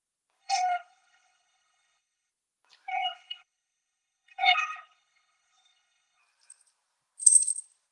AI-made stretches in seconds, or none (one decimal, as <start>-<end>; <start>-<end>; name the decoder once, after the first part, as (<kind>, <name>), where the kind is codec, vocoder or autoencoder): 0.4-2.3 (codec, HILCodec); 2.9-6.2